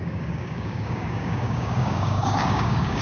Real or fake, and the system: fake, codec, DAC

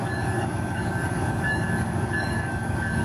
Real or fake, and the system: fake, codec, DAC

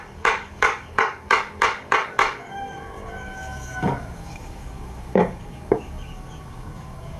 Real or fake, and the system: fake, codec, DAC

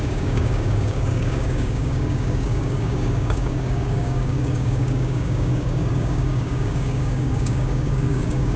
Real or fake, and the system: fake, codec, DAC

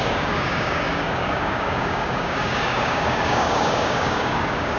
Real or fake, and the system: fake, codec, DAC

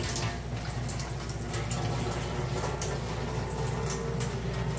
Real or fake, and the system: real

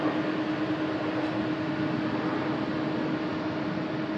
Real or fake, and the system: real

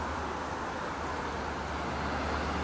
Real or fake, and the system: real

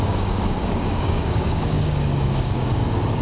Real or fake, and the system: fake, codec, DAC